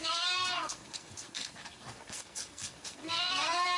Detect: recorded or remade remade